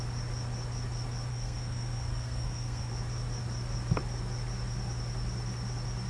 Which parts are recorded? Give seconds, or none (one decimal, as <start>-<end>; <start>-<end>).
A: 0.0-1.3; 2.9-6.1